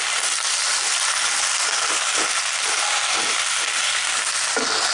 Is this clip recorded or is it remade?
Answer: recorded